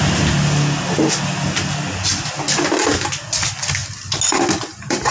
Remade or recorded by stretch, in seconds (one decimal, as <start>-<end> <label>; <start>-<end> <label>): 0.0-5.1 recorded